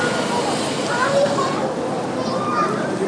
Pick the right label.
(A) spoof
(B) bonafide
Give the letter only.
B